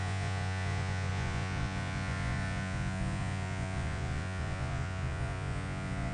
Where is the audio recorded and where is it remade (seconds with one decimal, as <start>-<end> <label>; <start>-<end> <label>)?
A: 0.0-6.1 remade